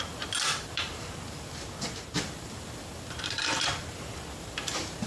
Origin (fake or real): fake